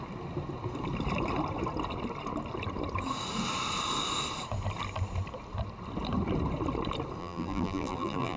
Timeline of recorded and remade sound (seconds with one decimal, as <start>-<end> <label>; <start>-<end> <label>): 0.0-7.2 recorded; 7.2-8.4 remade